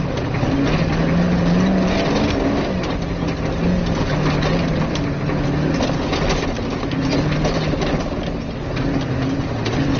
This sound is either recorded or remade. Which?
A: recorded